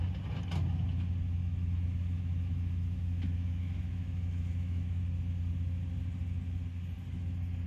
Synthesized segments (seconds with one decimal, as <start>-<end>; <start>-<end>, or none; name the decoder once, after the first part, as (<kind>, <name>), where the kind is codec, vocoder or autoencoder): 1.4-5.0 (autoencoder, DAC-VAE)